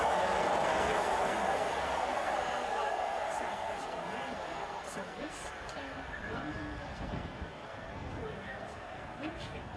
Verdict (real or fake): fake